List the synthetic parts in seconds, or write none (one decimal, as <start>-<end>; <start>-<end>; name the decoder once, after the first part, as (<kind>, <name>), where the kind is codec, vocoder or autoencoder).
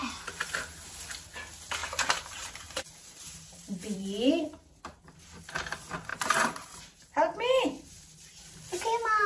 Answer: 1.8-4.8 (vocoder, BigVGAN v2); 6.1-8.4